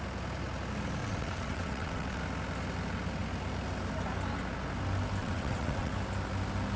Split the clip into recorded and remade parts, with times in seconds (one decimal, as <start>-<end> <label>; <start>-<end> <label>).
0.0-1.0 recorded; 1.0-2.2 remade; 2.2-5.2 recorded; 5.2-5.9 remade; 5.9-6.8 recorded